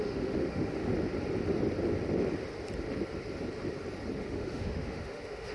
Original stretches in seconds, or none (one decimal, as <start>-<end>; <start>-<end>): 0.9-4.2